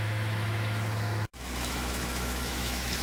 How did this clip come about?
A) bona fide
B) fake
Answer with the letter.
B